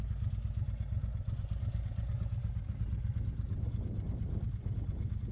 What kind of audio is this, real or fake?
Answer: real